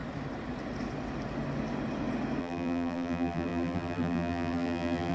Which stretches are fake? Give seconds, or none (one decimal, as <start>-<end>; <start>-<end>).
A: 2.4-5.1